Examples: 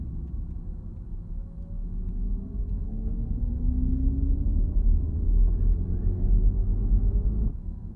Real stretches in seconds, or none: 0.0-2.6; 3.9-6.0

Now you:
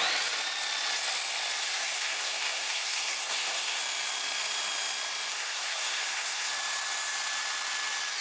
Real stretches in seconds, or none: 0.0-1.6; 3.8-5.3; 6.5-8.2

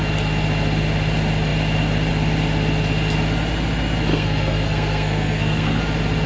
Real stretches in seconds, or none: 0.0-4.1; 5.8-6.3